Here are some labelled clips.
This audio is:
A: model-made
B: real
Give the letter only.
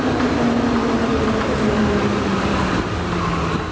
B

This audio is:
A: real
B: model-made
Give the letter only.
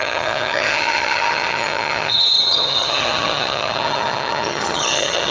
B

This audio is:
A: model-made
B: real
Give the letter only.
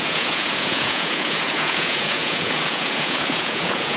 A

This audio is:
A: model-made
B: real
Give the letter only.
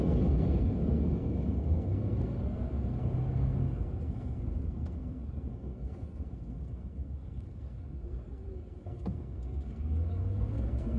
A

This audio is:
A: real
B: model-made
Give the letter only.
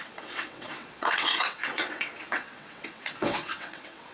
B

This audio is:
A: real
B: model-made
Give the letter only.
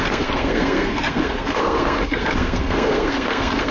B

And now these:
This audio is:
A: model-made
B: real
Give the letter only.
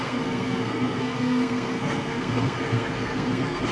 A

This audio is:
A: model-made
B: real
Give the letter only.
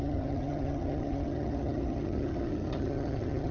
A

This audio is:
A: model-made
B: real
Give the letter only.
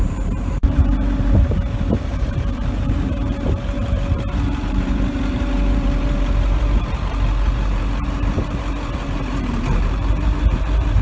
A